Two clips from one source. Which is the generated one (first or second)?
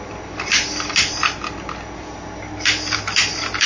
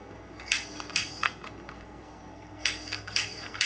second